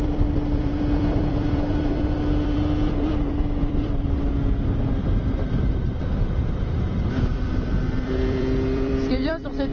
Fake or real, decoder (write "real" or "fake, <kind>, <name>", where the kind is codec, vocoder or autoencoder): fake, vocoder, BigVGAN v2